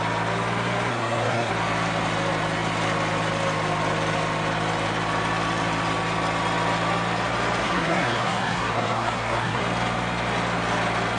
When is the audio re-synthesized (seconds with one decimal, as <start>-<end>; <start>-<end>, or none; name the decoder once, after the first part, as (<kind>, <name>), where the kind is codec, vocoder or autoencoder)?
0.9-1.5 (codec, SNAC); 7.6-9.6